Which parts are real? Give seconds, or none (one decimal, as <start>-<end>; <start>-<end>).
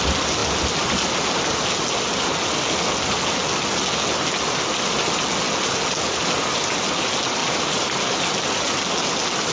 0.0-7.4; 8.2-9.5